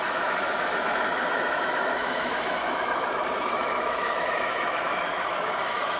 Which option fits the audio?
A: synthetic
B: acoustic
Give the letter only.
A